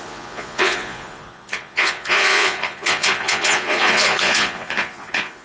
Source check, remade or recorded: remade